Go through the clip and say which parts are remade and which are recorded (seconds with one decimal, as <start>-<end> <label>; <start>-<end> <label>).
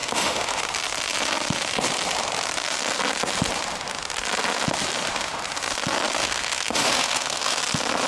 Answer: 0.0-0.6 remade; 0.6-6.2 recorded; 6.2-7.6 remade; 7.6-8.1 recorded